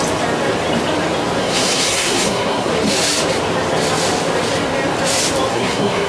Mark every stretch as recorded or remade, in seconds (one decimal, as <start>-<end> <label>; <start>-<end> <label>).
0.0-1.4 recorded; 1.4-2.7 remade; 2.7-5.5 recorded; 5.5-6.1 remade